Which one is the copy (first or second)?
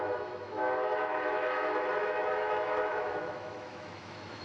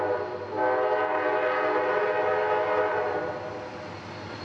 first